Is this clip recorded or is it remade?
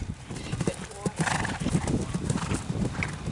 recorded